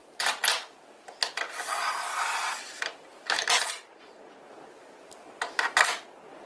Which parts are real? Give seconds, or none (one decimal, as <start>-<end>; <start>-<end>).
0.0-6.5